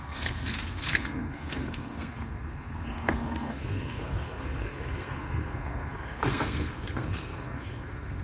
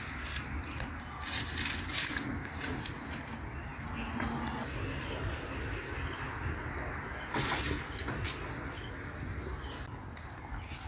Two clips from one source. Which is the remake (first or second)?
first